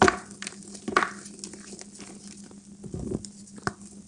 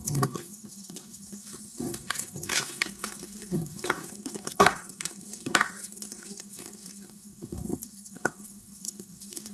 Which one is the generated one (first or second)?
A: second